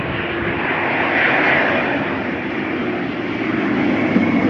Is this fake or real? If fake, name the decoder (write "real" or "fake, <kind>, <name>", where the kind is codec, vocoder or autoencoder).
real